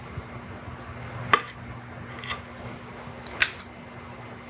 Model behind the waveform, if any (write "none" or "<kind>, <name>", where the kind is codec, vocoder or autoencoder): none